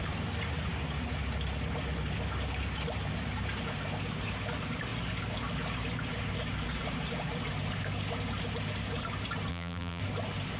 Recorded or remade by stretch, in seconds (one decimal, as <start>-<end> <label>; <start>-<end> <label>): 0.0-9.5 recorded; 9.5-10.0 remade; 10.0-10.6 recorded